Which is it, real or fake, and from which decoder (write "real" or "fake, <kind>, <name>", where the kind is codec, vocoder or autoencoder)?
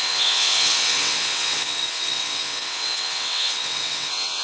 fake, vocoder, WaveNeXt